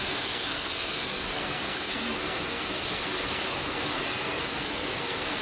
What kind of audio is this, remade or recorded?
remade